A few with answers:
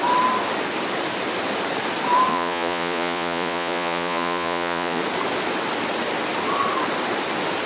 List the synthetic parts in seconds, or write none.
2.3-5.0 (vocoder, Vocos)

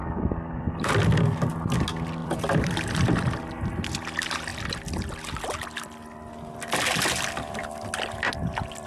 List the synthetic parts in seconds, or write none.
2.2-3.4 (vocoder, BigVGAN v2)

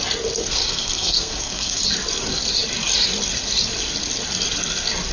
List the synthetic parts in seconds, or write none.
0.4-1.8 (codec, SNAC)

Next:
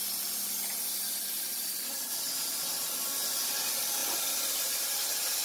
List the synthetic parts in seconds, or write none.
4.0-4.9 (vocoder, BigVGAN v2)

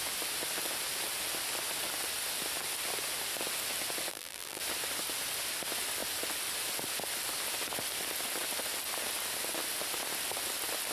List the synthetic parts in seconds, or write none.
4.1-4.6 (vocoder, BigVGAN v2)

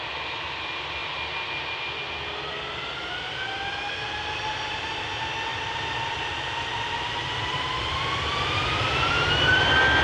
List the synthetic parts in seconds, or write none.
5.5-9.1 (vocoder, BigVGAN v2)